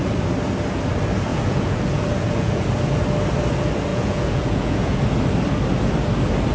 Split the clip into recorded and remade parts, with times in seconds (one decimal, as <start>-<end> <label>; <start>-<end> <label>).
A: 0.0-1.3 recorded; 1.3-2.7 remade; 2.7-3.9 recorded; 3.9-5.0 remade; 5.0-6.5 recorded